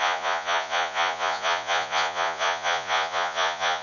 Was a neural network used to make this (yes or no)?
yes